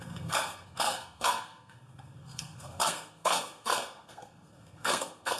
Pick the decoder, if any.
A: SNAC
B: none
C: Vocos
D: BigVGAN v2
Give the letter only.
A